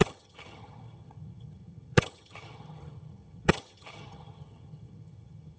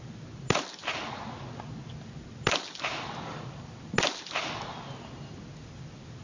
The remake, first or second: first